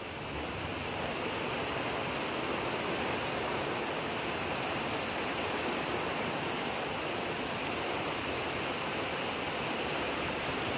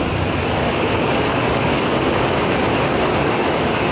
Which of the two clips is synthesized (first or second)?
second